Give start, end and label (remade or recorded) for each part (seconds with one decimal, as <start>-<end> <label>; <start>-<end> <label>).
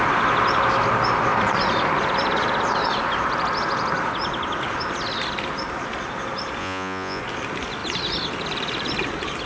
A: 0.0-6.6 recorded; 6.6-7.2 remade; 7.2-9.5 recorded